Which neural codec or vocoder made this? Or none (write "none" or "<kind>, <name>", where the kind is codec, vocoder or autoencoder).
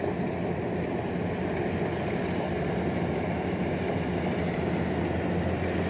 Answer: none